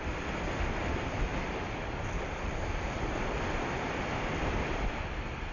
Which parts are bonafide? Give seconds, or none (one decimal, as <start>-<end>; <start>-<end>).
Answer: 0.0-5.5